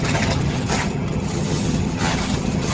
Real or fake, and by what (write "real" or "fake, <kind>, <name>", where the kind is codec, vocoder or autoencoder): fake, vocoder, HiFi-GAN